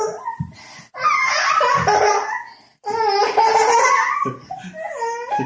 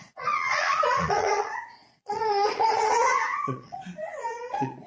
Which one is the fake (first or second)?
second